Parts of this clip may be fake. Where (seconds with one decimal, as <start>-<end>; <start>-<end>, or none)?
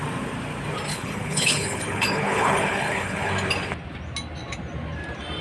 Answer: 0.9-3.3